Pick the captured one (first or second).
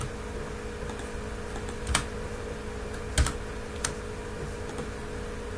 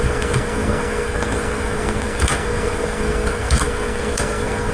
first